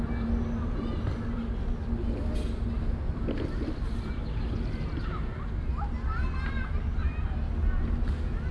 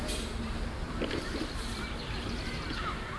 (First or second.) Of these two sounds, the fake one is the second